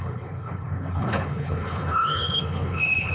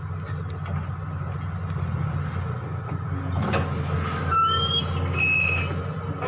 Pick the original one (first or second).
second